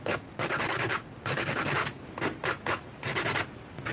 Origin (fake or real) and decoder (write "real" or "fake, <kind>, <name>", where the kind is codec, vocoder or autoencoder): real